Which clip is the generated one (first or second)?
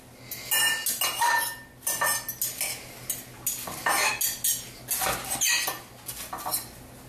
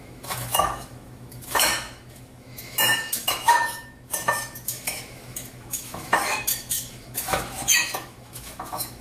second